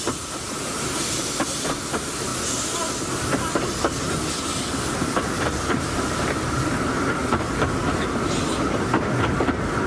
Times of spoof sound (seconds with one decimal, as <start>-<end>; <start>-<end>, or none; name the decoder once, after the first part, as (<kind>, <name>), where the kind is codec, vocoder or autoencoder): none